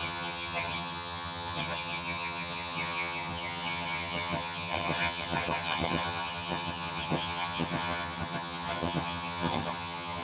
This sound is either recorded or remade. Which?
remade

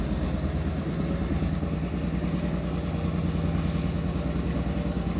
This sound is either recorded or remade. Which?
recorded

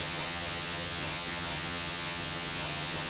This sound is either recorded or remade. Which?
remade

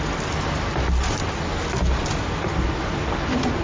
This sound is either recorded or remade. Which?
recorded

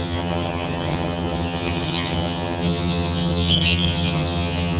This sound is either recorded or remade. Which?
remade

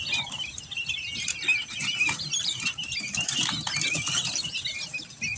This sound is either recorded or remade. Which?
recorded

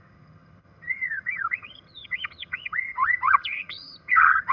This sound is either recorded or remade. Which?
remade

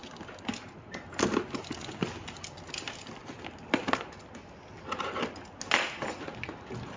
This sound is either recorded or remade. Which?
recorded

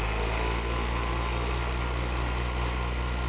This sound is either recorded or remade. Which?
recorded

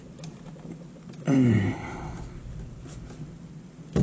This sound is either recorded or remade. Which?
recorded